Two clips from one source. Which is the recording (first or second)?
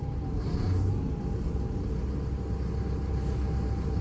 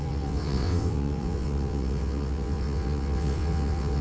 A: first